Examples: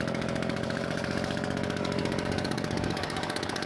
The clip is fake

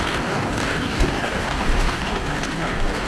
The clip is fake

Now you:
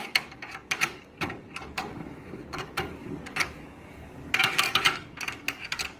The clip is fake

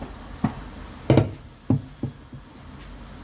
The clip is real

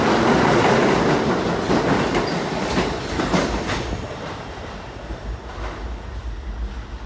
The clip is real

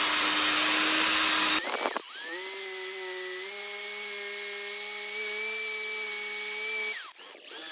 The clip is real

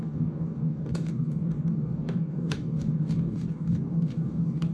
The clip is fake